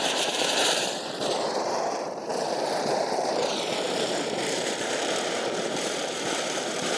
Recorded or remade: remade